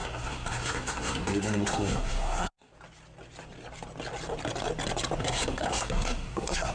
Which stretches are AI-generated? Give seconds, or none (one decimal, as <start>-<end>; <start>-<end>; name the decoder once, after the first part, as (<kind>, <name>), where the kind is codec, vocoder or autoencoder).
0.0-2.7 (codec, SNAC); 5.2-6.7